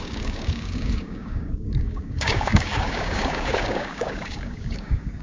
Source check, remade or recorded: remade